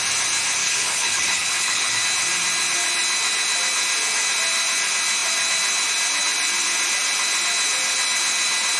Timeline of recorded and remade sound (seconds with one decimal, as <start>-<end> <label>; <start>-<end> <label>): 0.0-0.6 recorded; 0.6-2.0 remade; 2.0-8.8 recorded